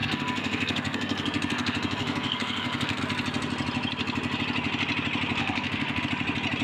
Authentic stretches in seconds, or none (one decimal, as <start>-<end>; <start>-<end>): 3.0-5.4; 6.0-6.6